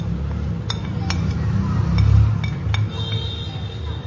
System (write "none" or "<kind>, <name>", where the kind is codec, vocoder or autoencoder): none